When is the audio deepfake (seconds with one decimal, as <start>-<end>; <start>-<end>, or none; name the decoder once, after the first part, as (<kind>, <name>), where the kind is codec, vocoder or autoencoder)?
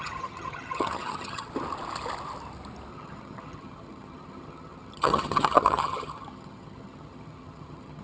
0.0-1.5 (vocoder, HiFi-GAN); 2.9-8.0